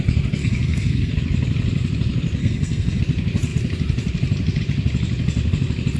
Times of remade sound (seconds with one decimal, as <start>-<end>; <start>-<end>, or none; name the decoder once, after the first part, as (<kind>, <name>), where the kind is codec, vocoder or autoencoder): 0.4-1.1 (codec, SNAC); 2.4-3.0